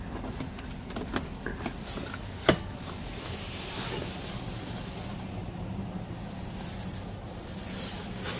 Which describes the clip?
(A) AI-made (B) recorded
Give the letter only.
B